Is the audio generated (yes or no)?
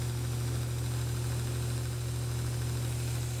no